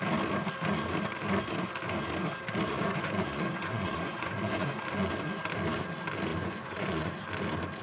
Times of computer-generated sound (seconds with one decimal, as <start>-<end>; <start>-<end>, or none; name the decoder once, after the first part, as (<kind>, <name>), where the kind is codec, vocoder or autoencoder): 2.7-4.8 (vocoder, Vocos); 6.3-7.2